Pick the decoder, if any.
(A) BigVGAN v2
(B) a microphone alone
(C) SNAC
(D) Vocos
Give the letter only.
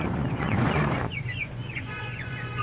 D